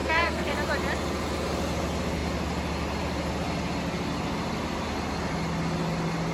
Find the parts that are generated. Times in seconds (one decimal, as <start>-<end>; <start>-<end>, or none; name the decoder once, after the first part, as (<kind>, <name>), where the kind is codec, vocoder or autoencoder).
0.0-0.5 (codec, SNAC)